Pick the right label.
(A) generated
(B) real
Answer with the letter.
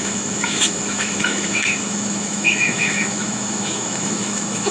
A